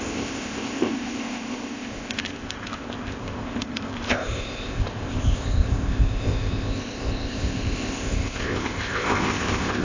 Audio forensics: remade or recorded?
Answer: remade